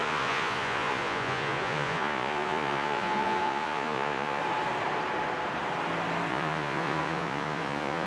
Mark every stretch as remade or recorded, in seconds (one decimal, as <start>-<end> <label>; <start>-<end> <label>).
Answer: 0.0-4.4 remade; 4.4-6.3 recorded; 6.3-8.1 remade

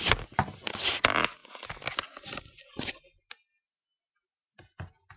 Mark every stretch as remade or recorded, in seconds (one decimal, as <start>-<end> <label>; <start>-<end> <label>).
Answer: 0.0-5.2 recorded

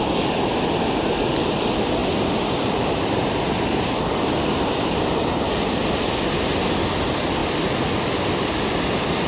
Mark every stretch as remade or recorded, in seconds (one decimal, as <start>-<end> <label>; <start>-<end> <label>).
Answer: 0.0-2.0 recorded; 2.0-6.0 remade; 6.0-9.3 recorded

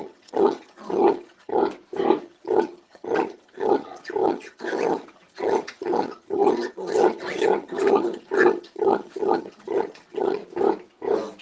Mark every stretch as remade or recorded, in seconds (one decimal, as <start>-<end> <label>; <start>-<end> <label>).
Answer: 0.0-1.6 remade; 1.6-2.2 recorded; 2.2-10.4 remade; 10.4-11.4 recorded

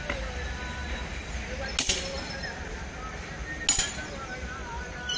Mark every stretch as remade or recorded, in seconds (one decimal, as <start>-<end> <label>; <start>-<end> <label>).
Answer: 0.0-5.2 recorded

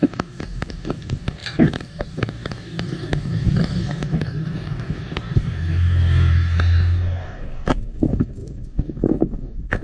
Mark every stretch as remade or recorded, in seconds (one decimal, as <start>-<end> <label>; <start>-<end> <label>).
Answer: 0.0-9.8 remade